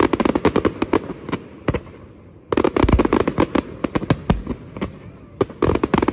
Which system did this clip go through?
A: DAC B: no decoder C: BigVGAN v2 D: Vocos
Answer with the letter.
B